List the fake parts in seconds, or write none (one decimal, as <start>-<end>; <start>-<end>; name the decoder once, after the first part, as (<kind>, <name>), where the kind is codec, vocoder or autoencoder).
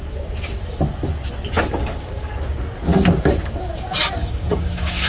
1.8-2.3 (codec, DAC); 4.2-5.1